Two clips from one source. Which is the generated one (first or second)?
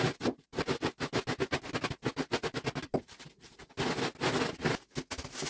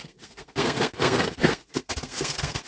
second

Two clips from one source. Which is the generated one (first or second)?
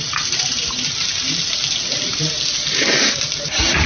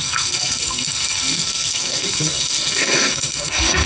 second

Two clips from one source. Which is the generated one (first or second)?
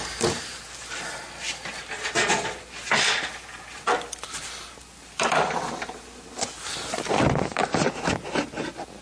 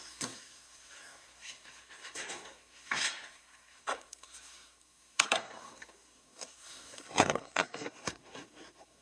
second